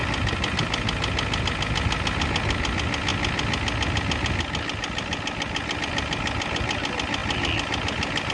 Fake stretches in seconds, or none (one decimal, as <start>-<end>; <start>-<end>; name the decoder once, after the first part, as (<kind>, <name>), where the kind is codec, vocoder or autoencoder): none